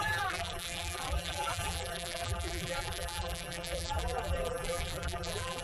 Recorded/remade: remade